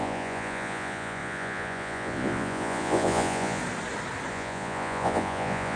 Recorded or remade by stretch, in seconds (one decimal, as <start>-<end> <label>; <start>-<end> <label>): 0.0-3.6 remade; 3.6-4.3 recorded; 4.3-5.8 remade